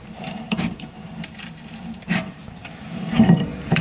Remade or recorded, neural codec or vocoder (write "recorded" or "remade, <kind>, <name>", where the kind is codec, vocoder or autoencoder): remade, vocoder, BigVGAN v2